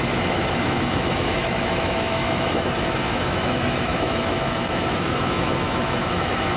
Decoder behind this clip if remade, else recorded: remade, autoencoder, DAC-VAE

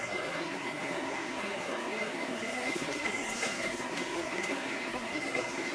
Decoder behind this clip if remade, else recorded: remade, codec, SNAC